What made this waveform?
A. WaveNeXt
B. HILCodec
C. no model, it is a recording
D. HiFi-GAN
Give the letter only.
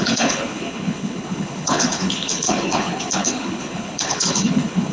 B